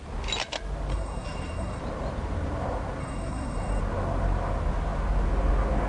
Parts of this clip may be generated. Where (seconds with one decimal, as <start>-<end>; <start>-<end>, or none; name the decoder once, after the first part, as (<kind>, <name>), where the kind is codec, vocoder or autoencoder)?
0.9-1.8 (codec, SNAC); 3.0-3.8